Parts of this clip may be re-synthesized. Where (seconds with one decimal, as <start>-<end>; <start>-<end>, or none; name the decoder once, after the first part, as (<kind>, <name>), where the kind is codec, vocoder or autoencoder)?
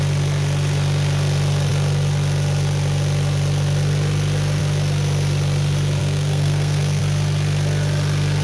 6.0-7.0 (codec, SNAC)